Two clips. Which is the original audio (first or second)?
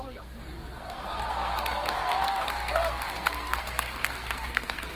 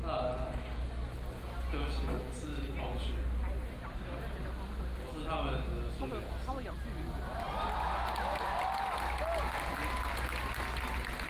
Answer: second